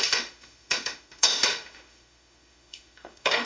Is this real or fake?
fake